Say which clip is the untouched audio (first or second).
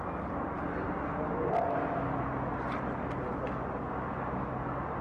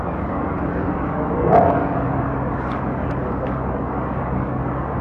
first